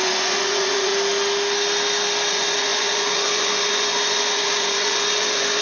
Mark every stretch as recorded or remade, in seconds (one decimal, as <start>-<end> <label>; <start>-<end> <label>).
0.0-0.9 remade; 0.9-2.3 recorded; 2.3-5.6 remade